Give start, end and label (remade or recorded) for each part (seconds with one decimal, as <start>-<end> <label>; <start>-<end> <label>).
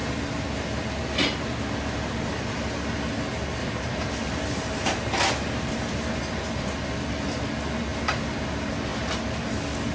0.0-3.6 recorded; 3.6-5.7 remade; 5.7-9.9 recorded